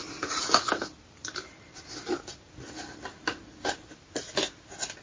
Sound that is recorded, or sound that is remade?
recorded